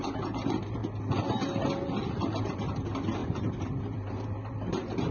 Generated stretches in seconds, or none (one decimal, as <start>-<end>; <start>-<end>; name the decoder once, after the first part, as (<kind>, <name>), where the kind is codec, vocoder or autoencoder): 0.0-0.8 (vocoder, BigVGAN v2); 2.4-5.1